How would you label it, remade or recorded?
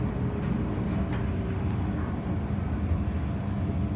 recorded